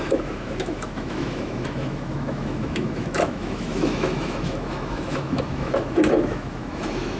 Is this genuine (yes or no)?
no